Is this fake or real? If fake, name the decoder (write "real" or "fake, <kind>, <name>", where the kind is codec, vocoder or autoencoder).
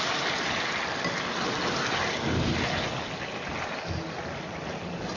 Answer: real